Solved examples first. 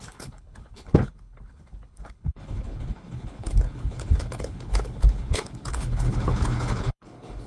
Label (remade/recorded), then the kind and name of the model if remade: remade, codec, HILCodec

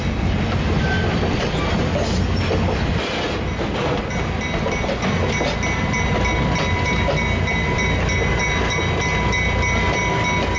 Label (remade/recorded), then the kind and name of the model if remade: recorded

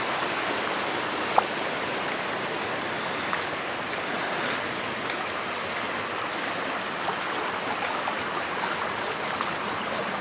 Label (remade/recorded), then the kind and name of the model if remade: recorded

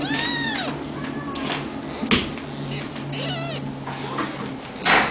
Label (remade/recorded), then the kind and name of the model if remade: recorded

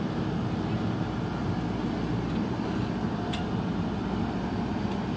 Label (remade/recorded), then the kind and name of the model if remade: recorded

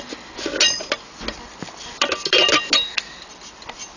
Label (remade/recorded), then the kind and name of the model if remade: recorded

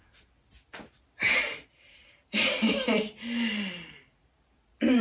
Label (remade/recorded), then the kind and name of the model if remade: recorded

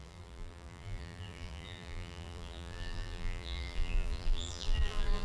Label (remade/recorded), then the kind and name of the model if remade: remade, vocoder, BigVGAN v2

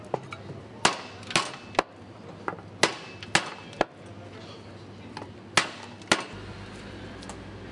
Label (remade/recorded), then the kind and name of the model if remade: recorded